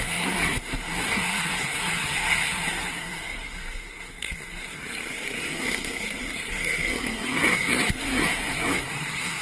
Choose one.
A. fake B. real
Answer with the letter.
A